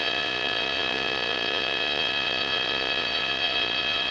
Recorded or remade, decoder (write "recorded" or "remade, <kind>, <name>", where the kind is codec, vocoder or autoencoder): remade, vocoder, Vocos